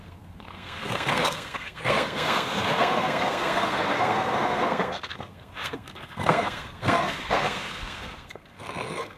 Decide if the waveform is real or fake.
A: fake